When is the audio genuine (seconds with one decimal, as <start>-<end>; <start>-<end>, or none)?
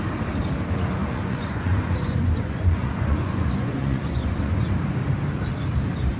0.0-1.0; 4.7-6.2